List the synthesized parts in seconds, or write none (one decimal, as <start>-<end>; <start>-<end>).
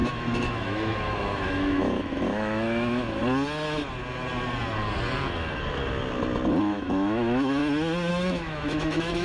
0.0-3.2; 6.6-7.6; 8.1-9.2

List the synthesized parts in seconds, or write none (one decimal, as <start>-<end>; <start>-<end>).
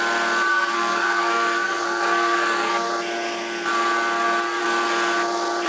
0.5-2.9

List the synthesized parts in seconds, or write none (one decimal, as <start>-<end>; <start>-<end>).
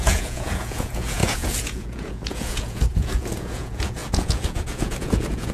0.0-5.5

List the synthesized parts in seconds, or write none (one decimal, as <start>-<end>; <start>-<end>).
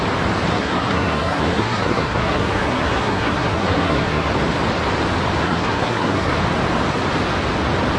0.5-4.3; 5.4-6.4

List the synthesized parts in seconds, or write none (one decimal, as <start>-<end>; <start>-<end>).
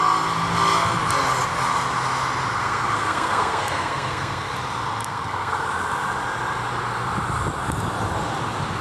2.6-4.5; 5.0-5.7